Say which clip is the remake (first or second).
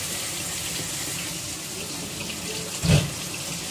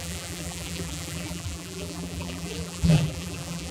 second